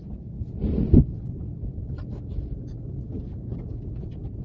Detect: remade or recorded recorded